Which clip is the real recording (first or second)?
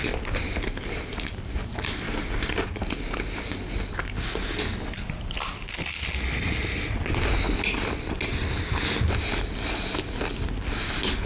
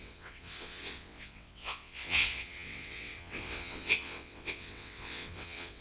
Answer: first